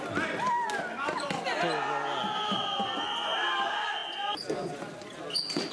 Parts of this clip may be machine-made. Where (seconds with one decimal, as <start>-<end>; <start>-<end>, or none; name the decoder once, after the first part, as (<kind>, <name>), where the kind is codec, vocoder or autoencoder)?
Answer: none